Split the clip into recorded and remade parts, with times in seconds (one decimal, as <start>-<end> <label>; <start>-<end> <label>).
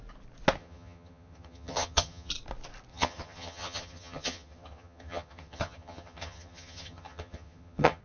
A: 0.0-0.6 recorded; 0.6-2.3 remade; 2.3-2.9 recorded; 2.9-8.0 remade